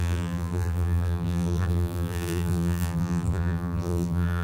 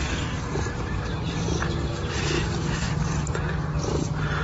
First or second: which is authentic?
second